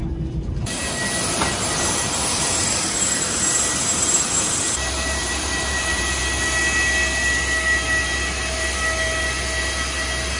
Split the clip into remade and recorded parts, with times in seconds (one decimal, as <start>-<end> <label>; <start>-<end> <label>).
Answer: 0.0-6.2 remade; 6.2-10.4 recorded